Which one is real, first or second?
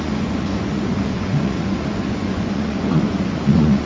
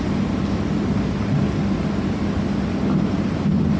second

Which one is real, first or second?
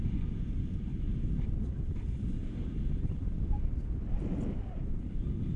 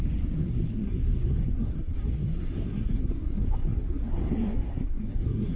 first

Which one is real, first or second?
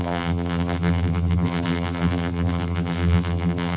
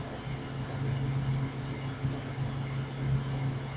second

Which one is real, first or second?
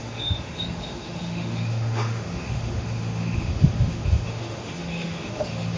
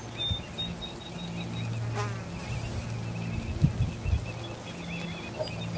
second